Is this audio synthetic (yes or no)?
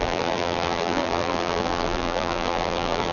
yes